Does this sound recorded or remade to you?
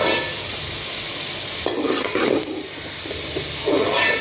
recorded